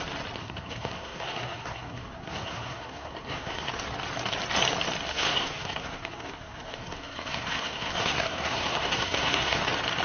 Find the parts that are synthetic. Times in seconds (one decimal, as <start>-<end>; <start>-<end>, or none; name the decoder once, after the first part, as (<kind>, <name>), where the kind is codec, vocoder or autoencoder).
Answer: 0.4-3.7 (codec, SNAC); 5.1-9.6